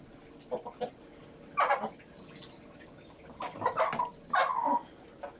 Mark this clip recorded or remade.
recorded